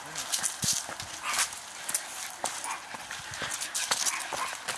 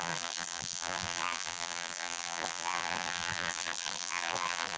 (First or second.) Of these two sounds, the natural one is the first